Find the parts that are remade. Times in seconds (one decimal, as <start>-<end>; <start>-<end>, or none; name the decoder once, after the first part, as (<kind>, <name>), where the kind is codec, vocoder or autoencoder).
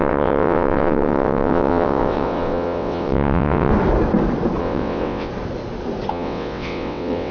0.0-3.7 (vocoder, WaveNeXt); 4.6-5.3; 6.1-7.3